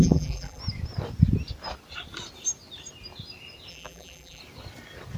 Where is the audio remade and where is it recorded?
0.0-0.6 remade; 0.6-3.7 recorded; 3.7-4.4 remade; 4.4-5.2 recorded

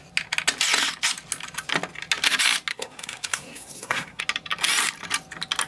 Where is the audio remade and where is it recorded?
0.0-2.7 recorded; 2.7-4.2 remade; 4.2-5.7 recorded

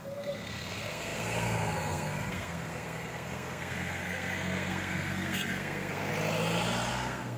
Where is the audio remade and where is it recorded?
0.0-6.1 remade; 6.1-6.9 recorded; 6.9-7.4 remade

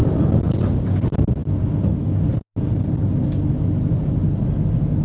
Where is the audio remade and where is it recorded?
0.0-5.0 recorded

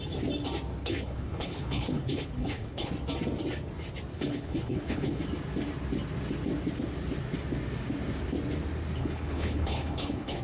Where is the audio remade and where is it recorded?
0.0-0.8 recorded; 0.8-2.9 remade; 2.9-4.1 recorded; 4.1-5.2 remade; 5.2-9.0 recorded; 9.0-10.4 remade

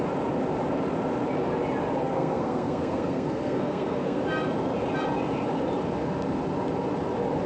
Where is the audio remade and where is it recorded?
0.0-2.0 recorded; 2.0-4.2 remade; 4.2-7.5 recorded

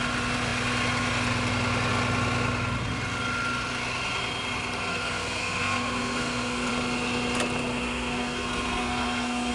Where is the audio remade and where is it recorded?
0.0-4.9 recorded; 4.9-6.7 remade; 6.7-7.7 recorded; 7.7-9.5 remade

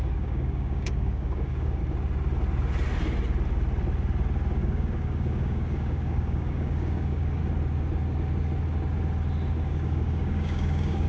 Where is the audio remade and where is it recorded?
0.0-1.8 remade; 1.8-4.6 recorded; 4.6-7.4 remade; 7.4-9.6 recorded; 9.6-11.1 remade